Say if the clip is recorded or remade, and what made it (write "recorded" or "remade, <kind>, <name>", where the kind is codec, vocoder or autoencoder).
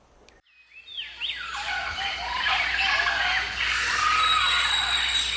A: recorded